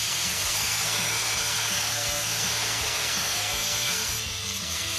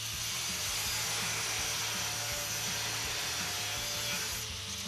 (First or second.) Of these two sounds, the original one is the second